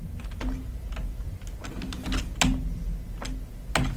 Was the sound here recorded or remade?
recorded